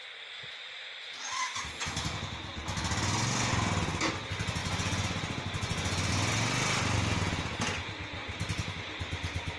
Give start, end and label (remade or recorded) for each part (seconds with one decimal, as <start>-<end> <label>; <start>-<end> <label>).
0.0-4.6 recorded; 4.6-6.1 remade; 6.1-9.6 recorded